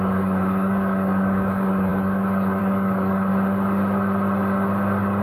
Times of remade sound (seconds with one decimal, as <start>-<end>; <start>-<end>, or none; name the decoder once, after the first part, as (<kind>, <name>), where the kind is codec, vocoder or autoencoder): 0.0-3.3 (codec, DAC)